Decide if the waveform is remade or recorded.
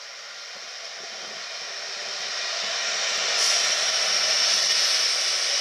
recorded